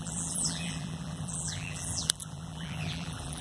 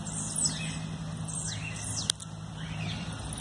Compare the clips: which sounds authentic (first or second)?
second